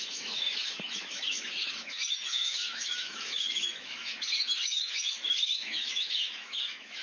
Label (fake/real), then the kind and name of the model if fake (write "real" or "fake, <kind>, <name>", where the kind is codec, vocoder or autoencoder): fake, autoencoder, DAC-VAE